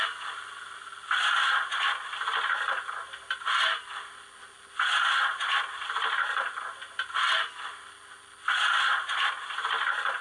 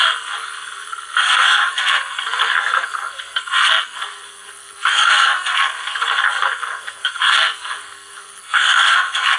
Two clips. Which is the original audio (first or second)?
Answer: first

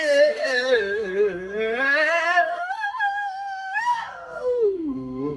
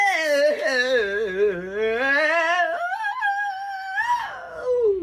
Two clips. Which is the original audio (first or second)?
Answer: second